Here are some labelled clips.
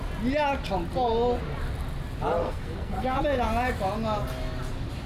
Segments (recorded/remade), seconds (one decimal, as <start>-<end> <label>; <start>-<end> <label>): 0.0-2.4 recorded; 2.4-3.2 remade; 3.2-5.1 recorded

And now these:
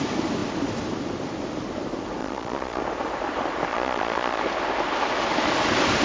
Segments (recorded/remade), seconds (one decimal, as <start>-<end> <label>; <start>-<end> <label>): 0.0-2.2 recorded; 2.2-2.8 remade; 2.8-3.7 recorded; 3.7-4.4 remade; 4.4-6.0 recorded

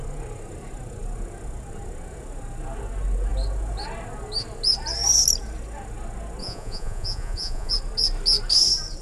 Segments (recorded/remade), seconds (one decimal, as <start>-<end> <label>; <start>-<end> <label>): 0.0-6.4 recorded; 6.4-7.7 remade; 7.7-9.0 recorded

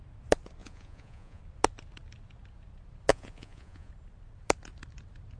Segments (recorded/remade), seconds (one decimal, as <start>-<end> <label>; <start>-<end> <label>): 0.0-0.6 recorded; 0.6-1.4 remade; 1.4-3.1 recorded; 3.1-3.9 remade; 3.9-5.4 recorded

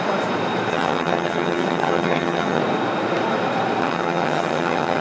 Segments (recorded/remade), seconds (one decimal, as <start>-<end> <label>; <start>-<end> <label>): 0.0-0.7 recorded; 0.7-2.6 remade; 2.6-3.8 recorded; 3.8-5.0 remade